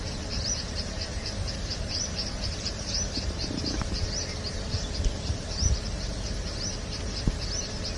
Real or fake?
fake